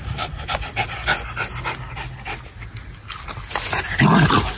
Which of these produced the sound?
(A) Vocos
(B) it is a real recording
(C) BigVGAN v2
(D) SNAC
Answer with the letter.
B